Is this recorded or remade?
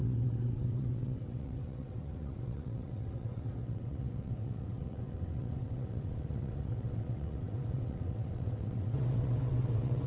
remade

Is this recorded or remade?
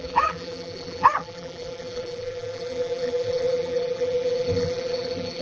remade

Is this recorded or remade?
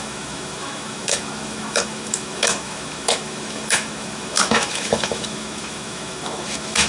remade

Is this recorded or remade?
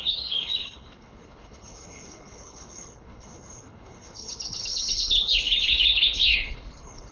remade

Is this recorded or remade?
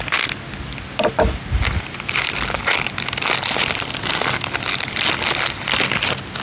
recorded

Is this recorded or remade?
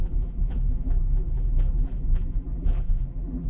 remade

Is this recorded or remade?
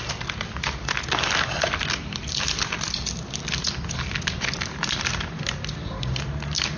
recorded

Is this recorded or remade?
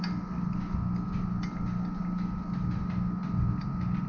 recorded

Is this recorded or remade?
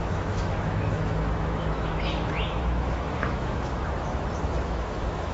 remade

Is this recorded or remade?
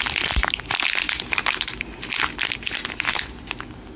recorded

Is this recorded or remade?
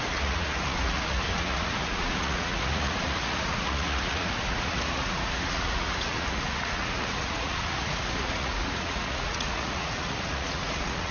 remade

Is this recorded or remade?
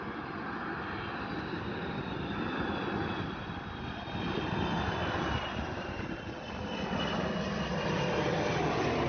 recorded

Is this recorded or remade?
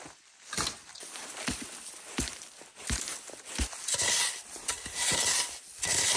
remade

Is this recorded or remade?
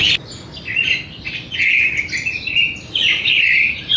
recorded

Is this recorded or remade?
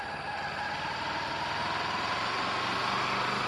recorded